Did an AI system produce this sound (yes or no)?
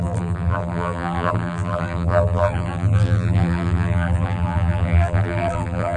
yes